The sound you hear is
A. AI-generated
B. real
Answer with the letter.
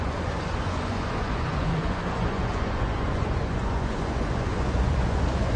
A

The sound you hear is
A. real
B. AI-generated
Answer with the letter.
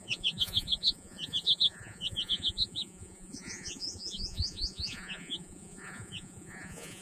B